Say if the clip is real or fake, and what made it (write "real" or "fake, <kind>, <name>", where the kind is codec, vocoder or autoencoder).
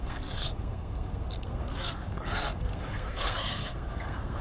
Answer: fake, codec, SNAC